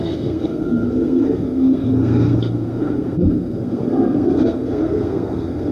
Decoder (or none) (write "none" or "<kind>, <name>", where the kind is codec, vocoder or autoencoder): codec, SNAC